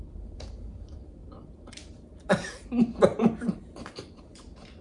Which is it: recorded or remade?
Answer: remade